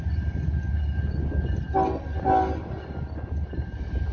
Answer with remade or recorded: recorded